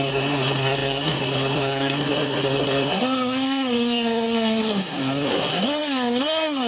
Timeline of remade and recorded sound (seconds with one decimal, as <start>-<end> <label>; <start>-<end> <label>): 0.0-6.7 remade